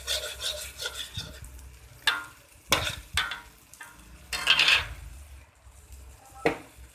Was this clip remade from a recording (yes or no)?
no